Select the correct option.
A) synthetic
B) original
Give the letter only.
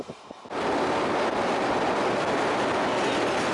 B